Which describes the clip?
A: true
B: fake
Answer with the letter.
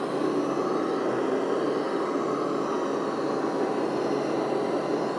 A